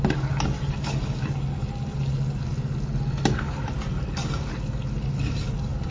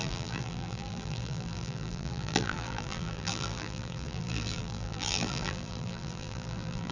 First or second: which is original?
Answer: first